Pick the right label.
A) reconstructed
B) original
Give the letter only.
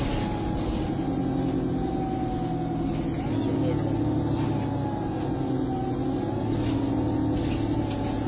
B